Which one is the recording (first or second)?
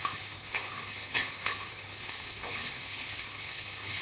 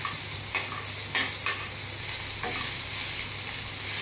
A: second